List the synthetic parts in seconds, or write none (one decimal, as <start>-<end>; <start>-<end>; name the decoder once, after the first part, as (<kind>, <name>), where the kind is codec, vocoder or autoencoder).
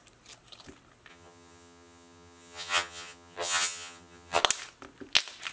1.1-4.4 (vocoder, HiFi-GAN)